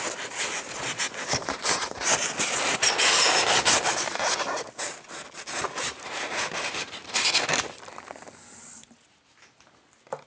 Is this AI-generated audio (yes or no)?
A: no